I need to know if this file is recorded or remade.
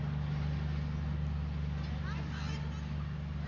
recorded